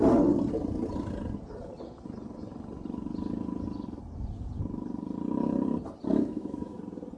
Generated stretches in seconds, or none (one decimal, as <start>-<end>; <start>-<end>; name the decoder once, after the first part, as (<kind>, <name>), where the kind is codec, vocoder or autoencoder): 6.1-6.8 (autoencoder, DAC-VAE)